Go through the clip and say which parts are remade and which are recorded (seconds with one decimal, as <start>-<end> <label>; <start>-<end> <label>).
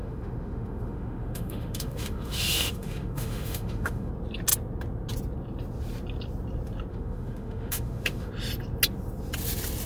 0.0-4.1 remade; 4.1-6.9 recorded; 6.9-8.3 remade; 8.3-9.9 recorded